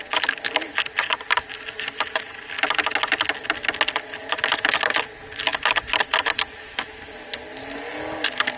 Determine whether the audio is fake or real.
real